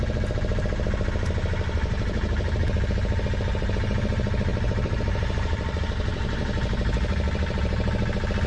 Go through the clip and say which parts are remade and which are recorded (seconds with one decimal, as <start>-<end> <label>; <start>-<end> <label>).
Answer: 0.0-4.5 recorded; 4.5-5.8 remade; 5.8-8.5 recorded